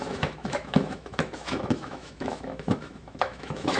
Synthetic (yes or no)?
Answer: yes